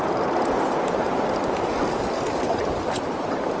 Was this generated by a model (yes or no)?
no